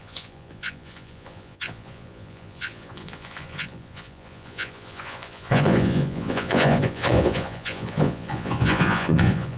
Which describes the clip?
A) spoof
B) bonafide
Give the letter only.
A